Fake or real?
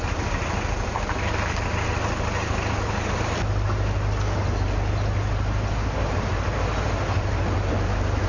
real